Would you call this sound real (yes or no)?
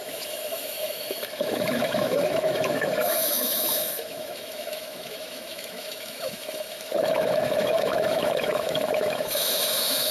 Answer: no